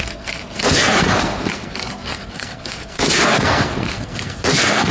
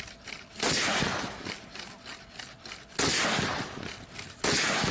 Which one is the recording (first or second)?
second